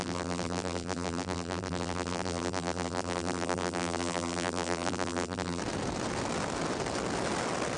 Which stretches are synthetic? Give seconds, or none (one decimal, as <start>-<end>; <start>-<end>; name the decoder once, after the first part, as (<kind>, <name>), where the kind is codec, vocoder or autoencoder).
0.0-5.6 (vocoder, BigVGAN v2)